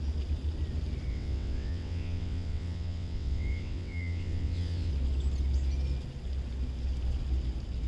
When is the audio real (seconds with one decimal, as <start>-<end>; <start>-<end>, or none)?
0.0-1.1; 4.9-7.9